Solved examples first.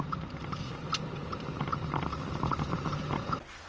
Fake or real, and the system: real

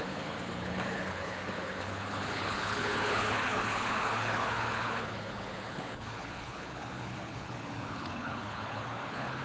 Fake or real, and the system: fake, codec, HILCodec